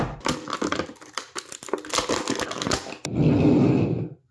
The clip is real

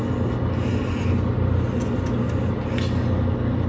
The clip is real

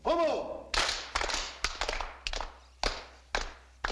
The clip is real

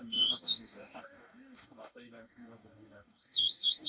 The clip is fake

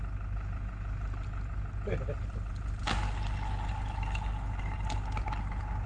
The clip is real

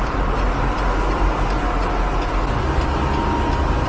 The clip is real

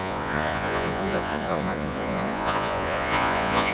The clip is fake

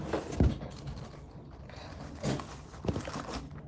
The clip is real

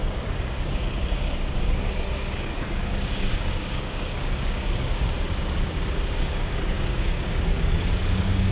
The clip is fake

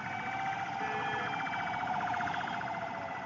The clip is real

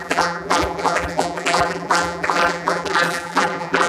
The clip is fake